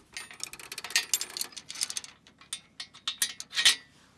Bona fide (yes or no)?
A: yes